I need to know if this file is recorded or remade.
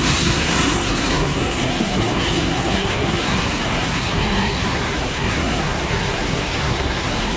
remade